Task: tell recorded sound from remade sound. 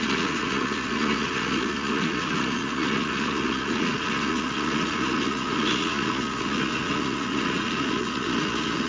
remade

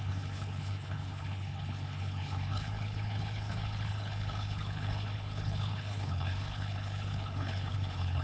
remade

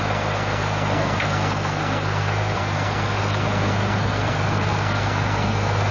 remade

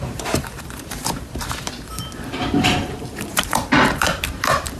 remade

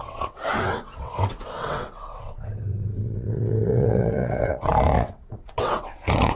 remade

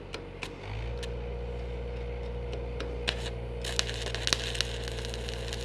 recorded